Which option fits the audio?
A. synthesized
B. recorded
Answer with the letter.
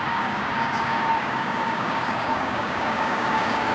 A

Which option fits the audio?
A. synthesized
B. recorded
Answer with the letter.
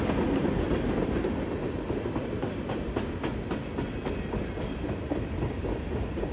B